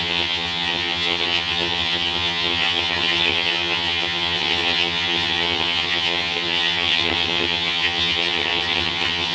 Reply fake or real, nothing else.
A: fake